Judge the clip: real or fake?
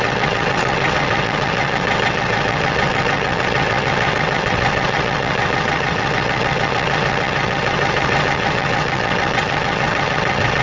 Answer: fake